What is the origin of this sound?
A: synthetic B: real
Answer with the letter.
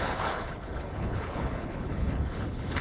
A